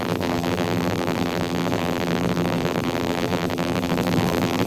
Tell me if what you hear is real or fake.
fake